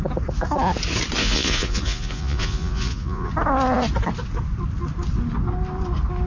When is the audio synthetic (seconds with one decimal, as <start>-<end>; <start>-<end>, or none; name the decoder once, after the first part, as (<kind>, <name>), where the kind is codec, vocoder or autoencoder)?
1.2-3.3 (vocoder, Vocos)